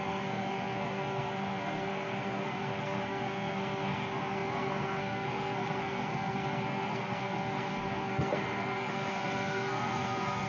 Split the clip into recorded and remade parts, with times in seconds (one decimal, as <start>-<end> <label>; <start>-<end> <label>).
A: 0.0-10.5 remade